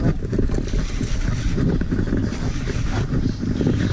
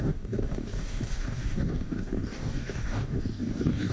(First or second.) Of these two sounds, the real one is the first